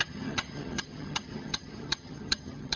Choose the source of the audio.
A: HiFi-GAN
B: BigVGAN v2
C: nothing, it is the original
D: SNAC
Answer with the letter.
A